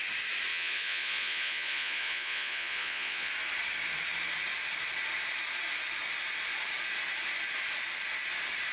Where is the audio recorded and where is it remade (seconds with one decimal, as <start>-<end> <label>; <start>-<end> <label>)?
0.0-0.5 recorded; 0.5-3.3 remade; 3.3-8.7 recorded